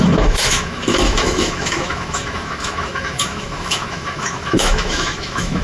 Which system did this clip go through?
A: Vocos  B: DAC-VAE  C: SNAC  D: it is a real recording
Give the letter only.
B